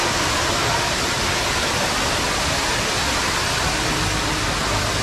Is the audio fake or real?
real